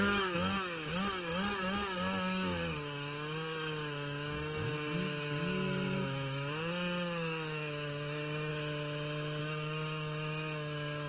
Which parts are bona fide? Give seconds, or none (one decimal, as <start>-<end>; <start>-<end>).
8.5-9.4